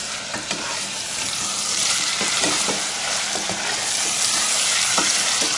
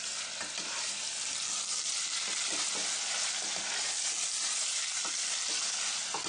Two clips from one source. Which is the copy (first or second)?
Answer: first